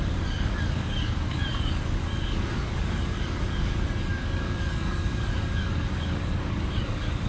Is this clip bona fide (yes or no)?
no